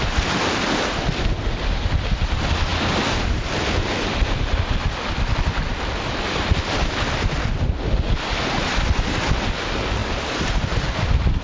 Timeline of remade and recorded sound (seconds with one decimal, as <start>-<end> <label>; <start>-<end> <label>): 0.0-11.4 recorded